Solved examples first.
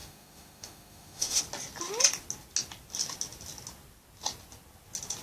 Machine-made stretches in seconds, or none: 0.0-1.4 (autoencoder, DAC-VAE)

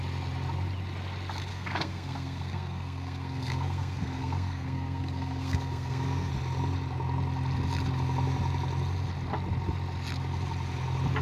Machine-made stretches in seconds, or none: 1.5-6.3 (codec, SNAC)

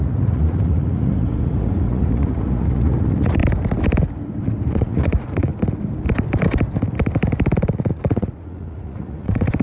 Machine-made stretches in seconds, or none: 0.0-3.4 (vocoder, Vocos); 4.7-5.5; 7.9-9.6

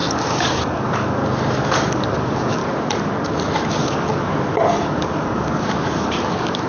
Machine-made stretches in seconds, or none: 0.0-1.2 (codec, DAC); 1.9-2.6; 3.7-4.3; 4.8-6.7

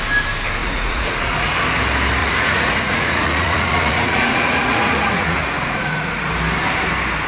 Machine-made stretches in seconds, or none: 0.6-1.5 (vocoder, Vocos); 2.2-6.3

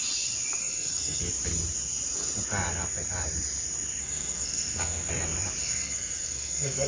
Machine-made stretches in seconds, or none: 0.6-1.2 (codec, SNAC); 4.0-5.1; 5.6-6.9